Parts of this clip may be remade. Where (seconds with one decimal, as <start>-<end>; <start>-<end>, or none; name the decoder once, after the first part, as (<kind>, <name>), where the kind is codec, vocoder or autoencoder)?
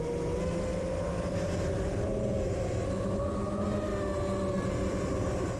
none